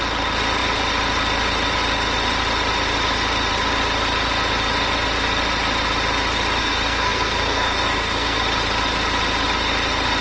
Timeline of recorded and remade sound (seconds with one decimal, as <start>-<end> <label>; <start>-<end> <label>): 0.0-6.6 recorded; 6.6-8.4 remade; 8.4-10.2 recorded